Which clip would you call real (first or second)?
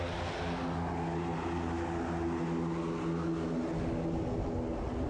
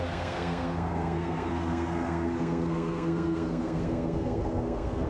first